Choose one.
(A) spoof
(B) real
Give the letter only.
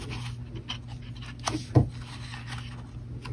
B